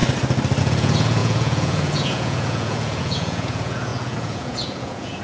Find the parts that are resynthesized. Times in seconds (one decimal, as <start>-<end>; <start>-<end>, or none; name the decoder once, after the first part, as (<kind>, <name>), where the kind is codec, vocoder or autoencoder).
0.6-5.2 (vocoder, Vocos)